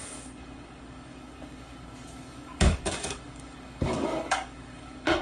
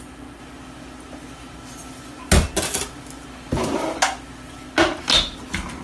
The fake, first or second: first